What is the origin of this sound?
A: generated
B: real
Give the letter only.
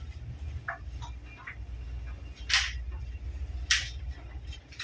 B